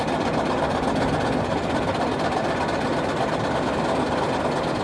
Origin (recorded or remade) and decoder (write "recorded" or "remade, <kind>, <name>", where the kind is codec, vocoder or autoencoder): recorded